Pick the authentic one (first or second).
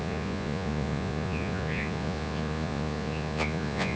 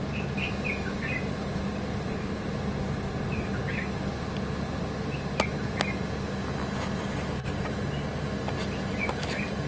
second